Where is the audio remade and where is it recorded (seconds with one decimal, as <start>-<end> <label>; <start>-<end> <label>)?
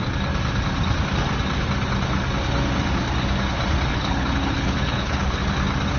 0.0-3.9 recorded; 3.9-5.5 remade; 5.5-6.0 recorded